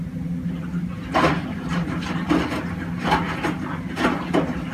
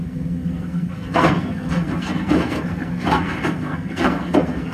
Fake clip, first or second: second